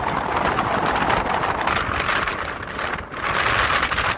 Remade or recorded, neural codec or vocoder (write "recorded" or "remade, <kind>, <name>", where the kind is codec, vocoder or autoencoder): recorded